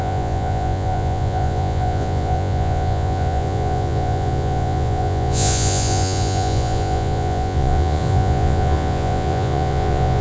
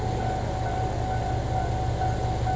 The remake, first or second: first